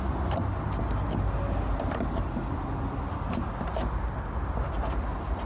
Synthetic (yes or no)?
no